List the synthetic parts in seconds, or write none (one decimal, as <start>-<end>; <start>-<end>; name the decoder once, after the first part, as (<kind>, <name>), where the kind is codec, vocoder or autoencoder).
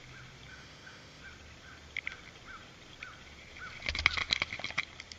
0.5-1.2 (autoencoder, DAC-VAE)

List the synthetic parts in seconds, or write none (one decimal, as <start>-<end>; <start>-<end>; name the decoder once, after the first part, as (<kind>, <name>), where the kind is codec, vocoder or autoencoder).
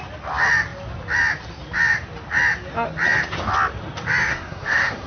4.3-5.1 (codec, SNAC)